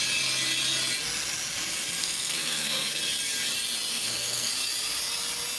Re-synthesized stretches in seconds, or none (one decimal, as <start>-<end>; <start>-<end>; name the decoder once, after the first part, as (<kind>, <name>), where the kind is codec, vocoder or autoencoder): 2.0-3.0 (codec, SNAC); 3.9-4.5